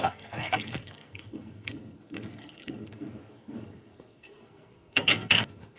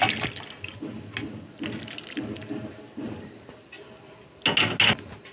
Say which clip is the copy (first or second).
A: first